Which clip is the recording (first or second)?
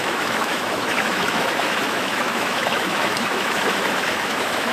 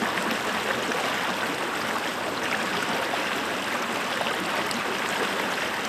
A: second